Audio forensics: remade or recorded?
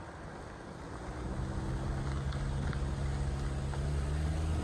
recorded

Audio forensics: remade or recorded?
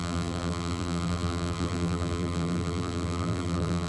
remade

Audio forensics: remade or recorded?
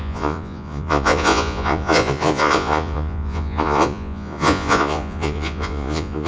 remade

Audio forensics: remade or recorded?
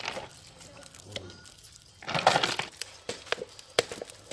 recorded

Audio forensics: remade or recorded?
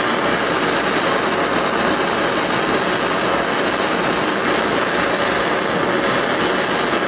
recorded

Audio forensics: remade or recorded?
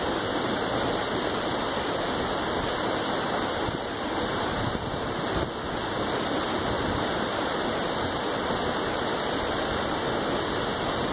recorded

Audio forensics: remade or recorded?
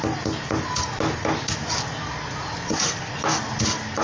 recorded